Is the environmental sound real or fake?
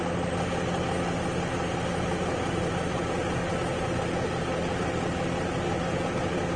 real